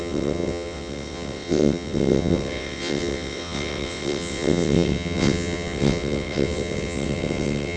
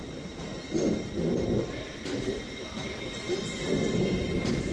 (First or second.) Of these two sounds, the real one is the second